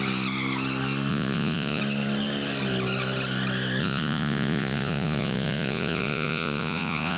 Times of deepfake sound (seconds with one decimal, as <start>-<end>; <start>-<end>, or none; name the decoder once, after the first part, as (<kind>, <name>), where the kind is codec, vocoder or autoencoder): 1.1-1.8 (vocoder, Vocos); 3.8-7.2